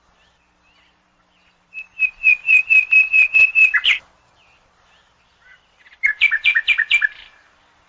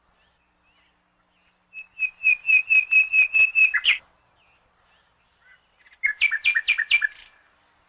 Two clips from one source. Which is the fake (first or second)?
first